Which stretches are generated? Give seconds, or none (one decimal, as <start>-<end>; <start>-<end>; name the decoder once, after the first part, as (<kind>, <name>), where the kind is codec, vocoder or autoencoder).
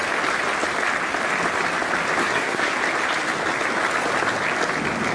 2.2-2.8 (codec, SNAC)